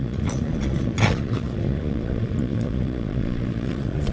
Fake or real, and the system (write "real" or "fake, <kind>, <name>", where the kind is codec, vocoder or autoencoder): fake, vocoder, Vocos